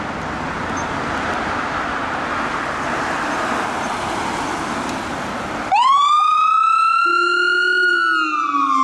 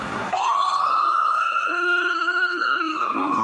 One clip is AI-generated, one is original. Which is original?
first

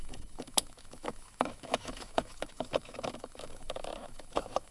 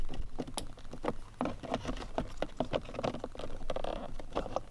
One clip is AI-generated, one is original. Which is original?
second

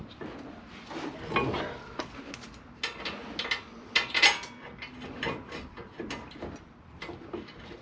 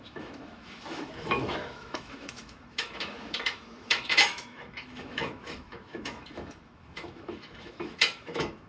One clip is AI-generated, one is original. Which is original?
first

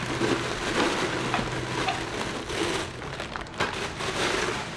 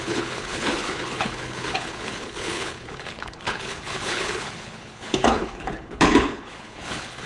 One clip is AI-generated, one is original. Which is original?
first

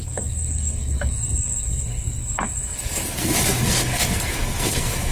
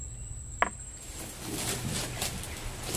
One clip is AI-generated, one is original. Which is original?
second